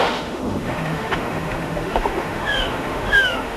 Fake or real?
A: fake